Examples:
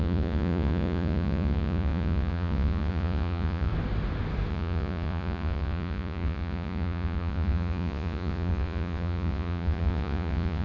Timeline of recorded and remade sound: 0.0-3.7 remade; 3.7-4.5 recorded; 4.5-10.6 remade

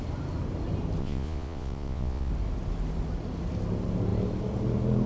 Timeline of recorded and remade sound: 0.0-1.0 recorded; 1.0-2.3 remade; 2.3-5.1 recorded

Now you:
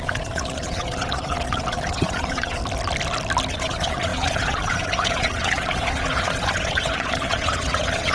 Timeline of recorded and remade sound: 0.0-2.6 remade; 2.6-3.5 recorded; 3.5-8.1 remade

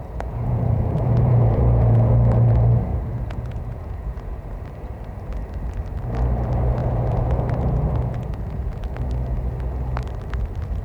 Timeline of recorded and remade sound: 0.0-2.1 remade; 2.1-2.9 recorded; 2.9-4.5 remade; 4.5-6.8 recorded; 6.8-8.8 remade; 8.8-10.8 recorded

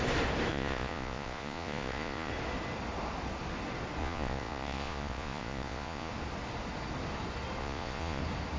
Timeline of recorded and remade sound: 0.0-0.5 recorded; 0.5-2.3 remade; 2.3-4.0 recorded; 4.0-6.1 remade; 6.1-7.6 recorded; 7.6-8.2 remade; 8.2-8.6 recorded

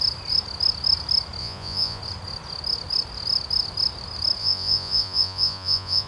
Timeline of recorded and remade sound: 0.0-1.4 recorded; 1.4-2.0 remade; 2.0-4.4 recorded; 4.4-6.1 remade

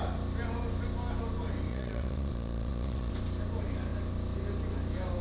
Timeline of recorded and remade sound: 0.0-1.7 recorded; 1.7-3.1 remade; 3.1-5.2 recorded